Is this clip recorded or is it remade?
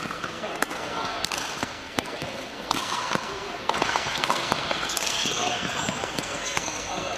remade